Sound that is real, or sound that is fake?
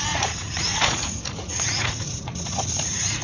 fake